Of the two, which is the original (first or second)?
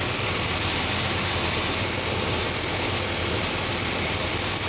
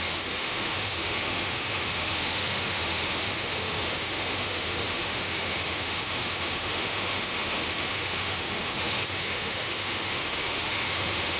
first